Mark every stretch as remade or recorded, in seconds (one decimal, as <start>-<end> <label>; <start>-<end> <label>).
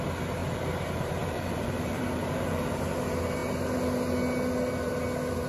0.0-0.4 recorded; 0.4-2.8 remade; 2.8-5.5 recorded